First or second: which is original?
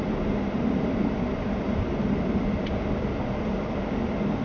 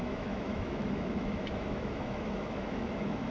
first